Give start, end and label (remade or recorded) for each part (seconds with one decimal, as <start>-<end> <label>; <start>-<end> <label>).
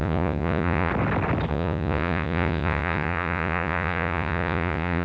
0.0-0.9 remade; 0.9-1.5 recorded; 1.5-5.0 remade